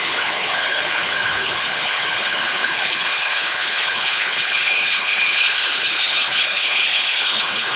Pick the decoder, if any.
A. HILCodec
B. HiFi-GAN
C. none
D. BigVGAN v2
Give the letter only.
A